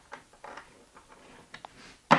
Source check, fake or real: real